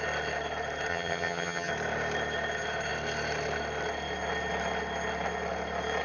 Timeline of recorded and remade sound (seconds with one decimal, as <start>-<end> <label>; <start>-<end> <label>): 0.0-0.9 recorded; 0.9-1.7 remade; 1.7-6.0 recorded

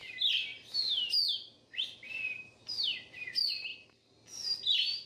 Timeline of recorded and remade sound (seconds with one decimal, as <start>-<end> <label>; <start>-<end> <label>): 0.0-0.5 remade; 0.5-2.2 recorded; 2.2-3.7 remade; 3.7-5.1 recorded

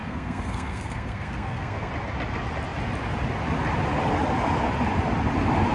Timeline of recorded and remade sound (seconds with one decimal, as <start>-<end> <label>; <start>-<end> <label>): 0.0-1.9 remade; 1.9-5.7 recorded

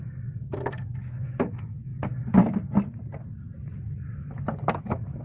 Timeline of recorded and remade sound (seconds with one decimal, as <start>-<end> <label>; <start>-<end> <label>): 0.0-1.9 remade; 1.9-4.8 recorded; 4.8-5.2 remade

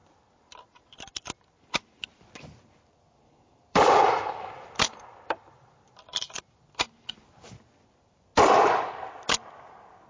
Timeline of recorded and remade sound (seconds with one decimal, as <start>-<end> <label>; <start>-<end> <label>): 0.0-3.5 recorded; 3.5-7.1 remade; 7.1-10.1 recorded

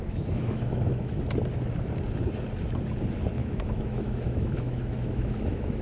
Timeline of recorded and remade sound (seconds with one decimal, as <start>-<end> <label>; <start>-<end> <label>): 0.0-1.2 remade; 1.2-3.4 recorded; 3.4-5.8 remade

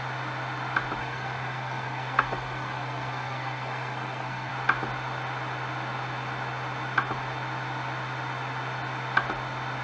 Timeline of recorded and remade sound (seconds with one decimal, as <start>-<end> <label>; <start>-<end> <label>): 0.0-1.0 recorded; 1.0-4.5 remade; 4.5-9.8 recorded

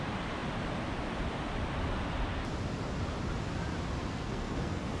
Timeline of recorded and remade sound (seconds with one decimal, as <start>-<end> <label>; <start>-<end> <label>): 0.0-4.0 recorded; 4.0-5.0 remade